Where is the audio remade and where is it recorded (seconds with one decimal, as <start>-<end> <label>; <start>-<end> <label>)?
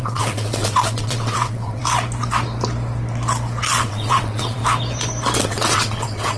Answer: 0.0-1.8 remade; 1.8-3.8 recorded; 3.8-4.6 remade; 4.6-5.4 recorded; 5.4-6.4 remade